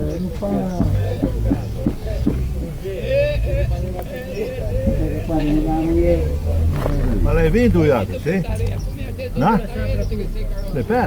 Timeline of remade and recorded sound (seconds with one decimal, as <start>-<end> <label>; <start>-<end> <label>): 0.0-2.5 remade; 2.5-4.8 recorded; 4.8-6.8 remade; 6.8-11.1 recorded